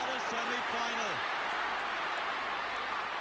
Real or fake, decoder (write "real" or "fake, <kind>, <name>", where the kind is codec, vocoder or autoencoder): real